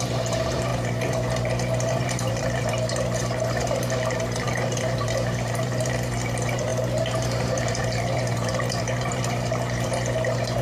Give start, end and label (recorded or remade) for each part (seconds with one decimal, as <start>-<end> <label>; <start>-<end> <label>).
0.0-10.6 remade